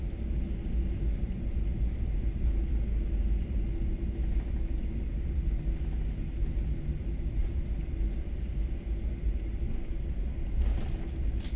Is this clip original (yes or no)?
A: yes